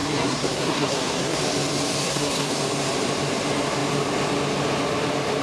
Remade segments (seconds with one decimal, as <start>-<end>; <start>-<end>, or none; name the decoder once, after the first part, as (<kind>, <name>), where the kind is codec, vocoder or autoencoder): 0.0-1.4 (codec, SNAC); 2.0-2.5